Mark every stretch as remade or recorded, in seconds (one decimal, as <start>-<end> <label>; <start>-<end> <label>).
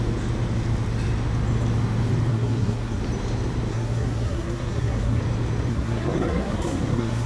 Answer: 0.0-2.3 recorded; 2.3-3.0 remade; 3.0-3.7 recorded; 3.7-5.2 remade; 5.2-5.7 recorded; 5.7-7.3 remade